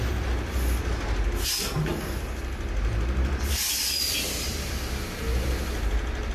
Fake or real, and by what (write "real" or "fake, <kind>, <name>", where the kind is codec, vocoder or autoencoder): real